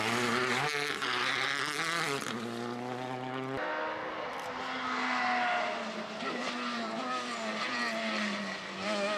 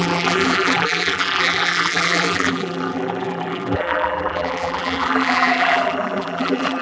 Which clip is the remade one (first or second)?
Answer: second